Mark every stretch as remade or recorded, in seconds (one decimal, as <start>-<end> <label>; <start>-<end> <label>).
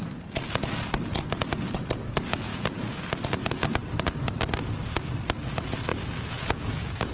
0.0-2.5 recorded; 2.5-3.1 remade; 3.1-5.9 recorded; 5.9-7.1 remade